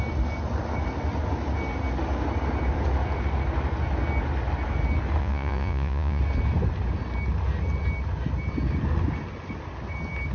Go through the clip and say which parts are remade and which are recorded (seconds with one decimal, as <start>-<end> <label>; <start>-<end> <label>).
0.0-5.2 recorded; 5.2-6.2 remade; 6.2-10.3 recorded